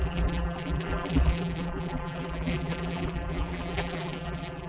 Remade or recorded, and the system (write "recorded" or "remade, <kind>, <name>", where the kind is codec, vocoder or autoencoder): remade, vocoder, BigVGAN v2